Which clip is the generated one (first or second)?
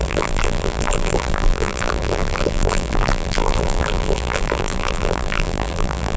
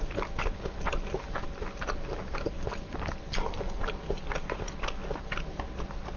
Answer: first